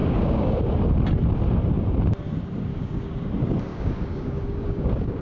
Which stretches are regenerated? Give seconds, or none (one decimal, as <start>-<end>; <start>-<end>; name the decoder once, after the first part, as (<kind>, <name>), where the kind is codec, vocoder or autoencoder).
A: 0.0-0.6 (codec, DAC); 2.7-3.3; 3.7-5.2